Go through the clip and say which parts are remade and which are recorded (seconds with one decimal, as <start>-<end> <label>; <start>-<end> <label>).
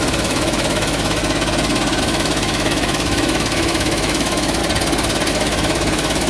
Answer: 0.0-1.2 remade; 1.2-2.0 recorded; 2.0-4.6 remade; 4.6-5.3 recorded; 5.3-6.3 remade